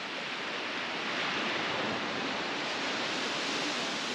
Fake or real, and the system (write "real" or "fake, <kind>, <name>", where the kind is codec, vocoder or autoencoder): real